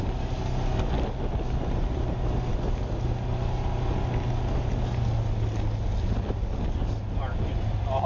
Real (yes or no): yes